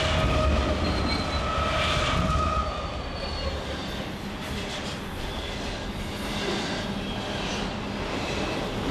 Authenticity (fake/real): real